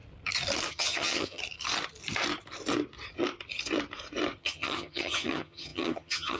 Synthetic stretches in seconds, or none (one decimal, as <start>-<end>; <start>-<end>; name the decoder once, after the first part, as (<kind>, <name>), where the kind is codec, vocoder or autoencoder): 0.7-1.4 (vocoder, HiFi-GAN); 4.4-6.4